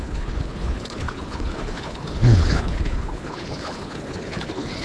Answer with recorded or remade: remade